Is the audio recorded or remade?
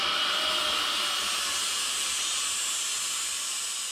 recorded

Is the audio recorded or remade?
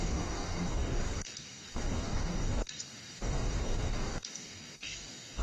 remade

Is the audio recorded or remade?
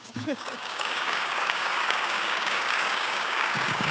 remade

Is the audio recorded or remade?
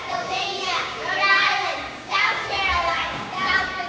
remade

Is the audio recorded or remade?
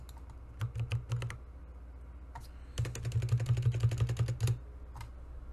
recorded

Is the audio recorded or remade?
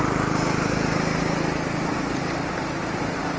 recorded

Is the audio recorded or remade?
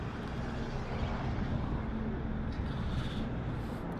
recorded